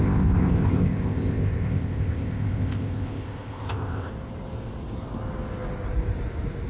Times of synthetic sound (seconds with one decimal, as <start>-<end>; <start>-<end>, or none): 0.0-4.1